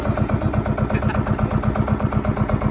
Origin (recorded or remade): recorded